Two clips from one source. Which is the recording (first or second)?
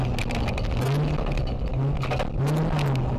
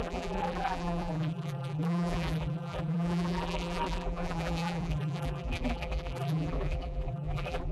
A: first